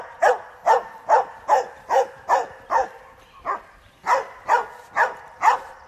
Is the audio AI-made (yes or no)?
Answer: no